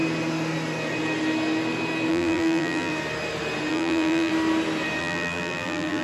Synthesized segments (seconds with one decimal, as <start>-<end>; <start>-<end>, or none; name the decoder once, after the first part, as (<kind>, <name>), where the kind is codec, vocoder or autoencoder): 2.1-2.9 (vocoder, BigVGAN v2); 3.7-4.3; 5.0-6.0